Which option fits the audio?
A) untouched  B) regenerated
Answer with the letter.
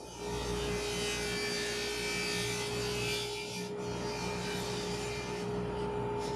A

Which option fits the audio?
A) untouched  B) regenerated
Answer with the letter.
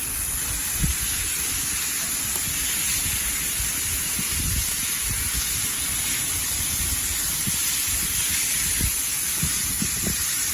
A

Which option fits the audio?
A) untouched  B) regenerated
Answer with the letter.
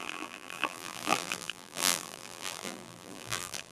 B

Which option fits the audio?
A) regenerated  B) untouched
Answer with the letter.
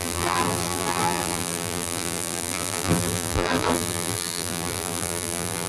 A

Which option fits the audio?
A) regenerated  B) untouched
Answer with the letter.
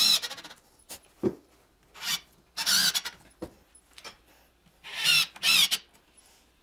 B